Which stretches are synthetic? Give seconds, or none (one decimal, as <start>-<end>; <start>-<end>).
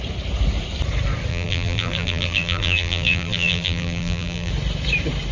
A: 1.3-4.5